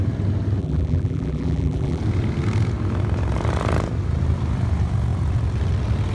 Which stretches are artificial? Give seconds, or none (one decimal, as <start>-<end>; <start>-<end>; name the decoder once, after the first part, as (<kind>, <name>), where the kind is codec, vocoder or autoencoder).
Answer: 0.6-2.0 (vocoder, BigVGAN v2)